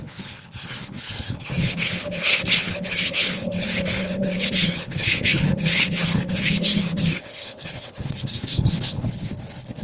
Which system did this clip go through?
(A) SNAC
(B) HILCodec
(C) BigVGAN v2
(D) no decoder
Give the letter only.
B